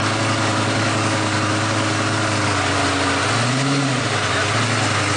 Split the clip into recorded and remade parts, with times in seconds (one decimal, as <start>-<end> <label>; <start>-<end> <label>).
0.0-2.8 remade; 2.8-5.2 recorded